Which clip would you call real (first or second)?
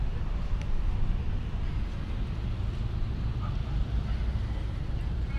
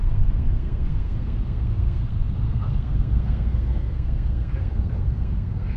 first